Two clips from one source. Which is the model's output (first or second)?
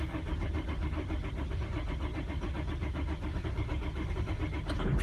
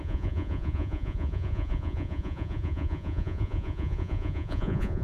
second